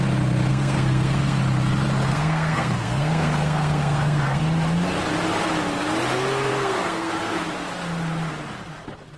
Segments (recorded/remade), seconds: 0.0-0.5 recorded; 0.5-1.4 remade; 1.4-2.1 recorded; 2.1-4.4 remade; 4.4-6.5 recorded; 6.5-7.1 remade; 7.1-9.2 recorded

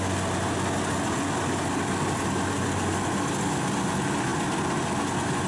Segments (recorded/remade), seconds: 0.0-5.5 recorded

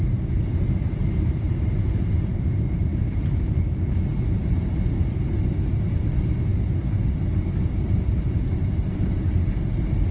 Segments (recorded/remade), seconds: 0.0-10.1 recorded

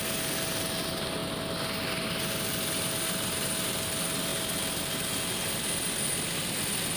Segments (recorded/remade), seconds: 0.0-7.0 recorded